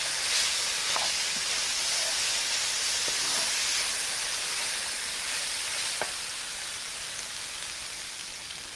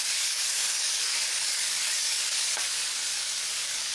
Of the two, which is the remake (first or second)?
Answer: second